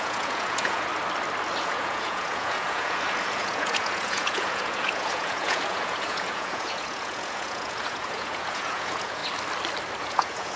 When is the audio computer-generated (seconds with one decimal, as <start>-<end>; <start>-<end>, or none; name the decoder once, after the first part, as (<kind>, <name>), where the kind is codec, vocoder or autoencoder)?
0.0-0.9 (vocoder, Vocos); 1.6-9.2; 10.0-10.6

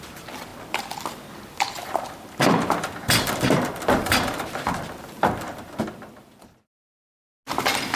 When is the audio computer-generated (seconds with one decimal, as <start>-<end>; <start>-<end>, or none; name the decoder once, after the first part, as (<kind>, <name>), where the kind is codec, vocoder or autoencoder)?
0.0-6.9 (vocoder, BigVGAN v2)

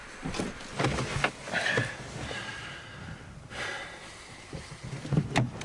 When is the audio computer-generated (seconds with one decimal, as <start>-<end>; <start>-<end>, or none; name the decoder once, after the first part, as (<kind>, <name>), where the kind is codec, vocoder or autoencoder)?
none

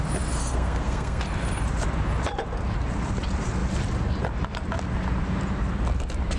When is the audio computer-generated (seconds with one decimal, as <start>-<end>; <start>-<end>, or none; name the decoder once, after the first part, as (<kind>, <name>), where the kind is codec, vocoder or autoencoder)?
0.4-1.2 (codec, SNAC)

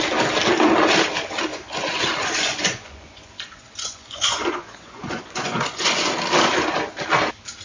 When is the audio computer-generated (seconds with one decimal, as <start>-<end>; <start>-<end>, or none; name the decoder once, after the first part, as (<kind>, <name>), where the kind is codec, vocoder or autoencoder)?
1.5-6.1 (vocoder, Vocos)

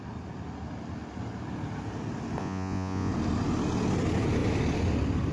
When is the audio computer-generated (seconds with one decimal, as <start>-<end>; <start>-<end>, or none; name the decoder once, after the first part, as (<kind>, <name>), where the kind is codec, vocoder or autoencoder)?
2.4-3.1 (vocoder, Vocos)

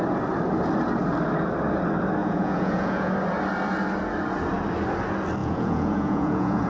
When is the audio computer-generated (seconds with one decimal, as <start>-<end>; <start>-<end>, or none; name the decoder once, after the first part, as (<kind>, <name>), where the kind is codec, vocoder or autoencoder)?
2.2-3.1 (vocoder, Vocos); 5.4-6.7

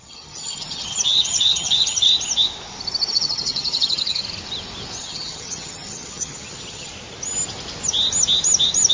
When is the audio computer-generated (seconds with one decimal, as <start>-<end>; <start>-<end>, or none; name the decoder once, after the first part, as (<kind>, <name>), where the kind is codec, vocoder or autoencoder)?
0.0-2.1 (vocoder, HiFi-GAN); 3.1-4.2; 5.0-6.9